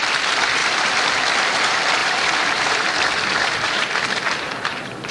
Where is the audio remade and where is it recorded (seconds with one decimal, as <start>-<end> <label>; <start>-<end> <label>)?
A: 0.0-0.6 recorded; 0.6-1.4 remade; 1.4-2.0 recorded; 2.0-5.1 remade